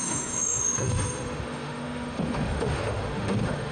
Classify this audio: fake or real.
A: fake